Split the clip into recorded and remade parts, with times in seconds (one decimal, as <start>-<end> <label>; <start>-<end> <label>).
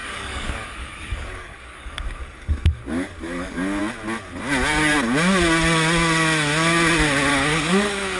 0.0-3.8 remade; 3.8-7.3 recorded; 7.3-8.2 remade